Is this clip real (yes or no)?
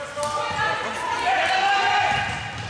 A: yes